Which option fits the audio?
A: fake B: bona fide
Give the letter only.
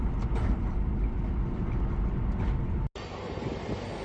B